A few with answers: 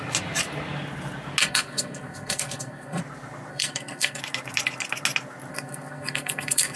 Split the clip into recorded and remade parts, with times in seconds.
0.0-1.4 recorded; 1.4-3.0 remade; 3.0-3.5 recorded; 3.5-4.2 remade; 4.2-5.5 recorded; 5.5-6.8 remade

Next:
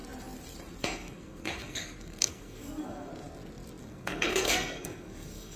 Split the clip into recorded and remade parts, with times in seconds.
0.0-0.8 recorded; 0.8-3.1 remade; 3.1-3.8 recorded; 3.8-5.6 remade

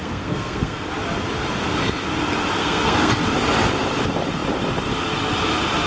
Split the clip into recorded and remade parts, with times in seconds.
0.0-0.9 remade; 0.9-2.6 recorded; 2.6-3.1 remade; 3.1-5.9 recorded

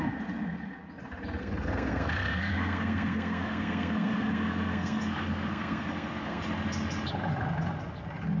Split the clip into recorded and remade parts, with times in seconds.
0.0-1.4 recorded; 1.4-6.4 remade; 6.4-8.4 recorded

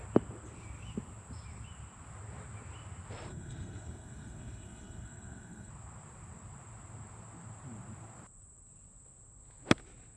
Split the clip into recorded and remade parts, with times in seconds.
0.0-3.3 recorded; 3.3-5.7 remade; 5.7-10.2 recorded

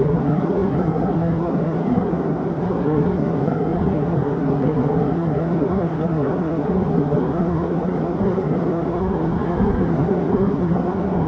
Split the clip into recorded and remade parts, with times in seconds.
0.0-11.3 remade

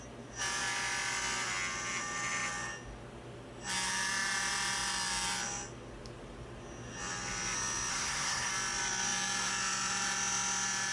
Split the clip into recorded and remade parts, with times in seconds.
0.0-7.9 recorded; 7.9-8.5 remade; 8.5-10.9 recorded

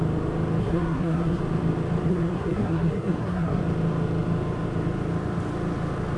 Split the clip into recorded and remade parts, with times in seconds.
0.0-0.6 recorded; 0.6-1.4 remade; 1.4-2.1 recorded; 2.1-3.6 remade; 3.6-6.2 recorded